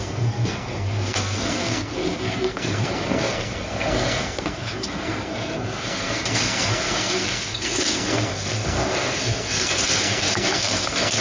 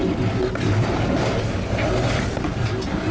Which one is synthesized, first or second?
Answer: first